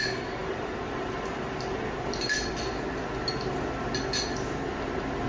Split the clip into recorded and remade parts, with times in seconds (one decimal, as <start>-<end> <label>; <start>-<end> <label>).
0.0-0.4 recorded; 0.4-2.5 remade; 2.5-5.3 recorded